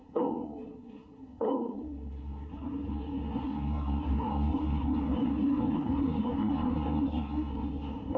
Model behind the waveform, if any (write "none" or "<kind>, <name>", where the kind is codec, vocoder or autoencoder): codec, SNAC